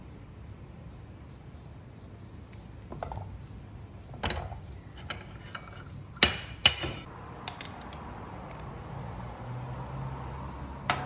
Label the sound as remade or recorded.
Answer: recorded